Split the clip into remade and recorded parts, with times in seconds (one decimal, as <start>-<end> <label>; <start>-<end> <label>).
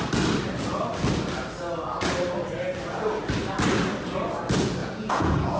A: 0.0-4.8 recorded; 4.8-5.6 remade